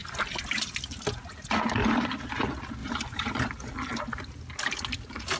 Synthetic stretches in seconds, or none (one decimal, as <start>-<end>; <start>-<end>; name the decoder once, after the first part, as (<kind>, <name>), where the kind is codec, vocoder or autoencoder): 2.8-3.4 (vocoder, BigVGAN v2)